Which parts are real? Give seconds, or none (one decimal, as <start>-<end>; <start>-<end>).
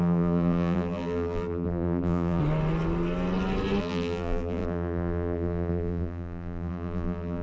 2.4-3.8